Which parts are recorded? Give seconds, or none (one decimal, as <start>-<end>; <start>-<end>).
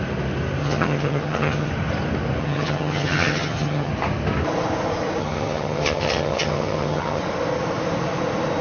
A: 0.0-0.6; 1.7-2.4; 3.9-5.2; 7.2-8.6